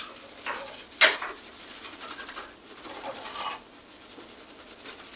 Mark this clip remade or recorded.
recorded